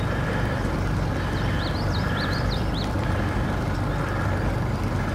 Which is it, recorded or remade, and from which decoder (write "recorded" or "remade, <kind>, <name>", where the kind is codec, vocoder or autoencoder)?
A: recorded